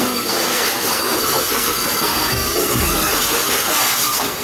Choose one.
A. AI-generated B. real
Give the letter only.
A